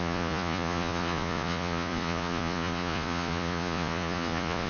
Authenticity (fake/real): fake